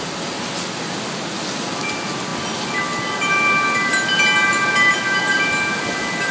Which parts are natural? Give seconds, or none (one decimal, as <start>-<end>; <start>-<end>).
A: 0.0-6.3